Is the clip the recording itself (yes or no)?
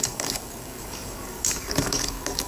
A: no